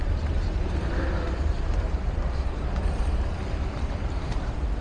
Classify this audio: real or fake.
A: fake